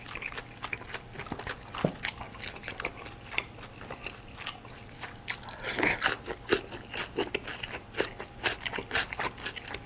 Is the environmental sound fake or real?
real